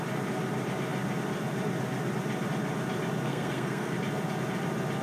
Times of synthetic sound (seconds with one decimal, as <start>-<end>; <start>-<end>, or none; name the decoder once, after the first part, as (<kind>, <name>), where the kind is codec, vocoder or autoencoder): 3.3-4.0 (codec, SNAC)